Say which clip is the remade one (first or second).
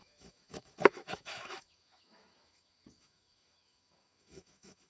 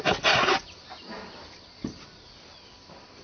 first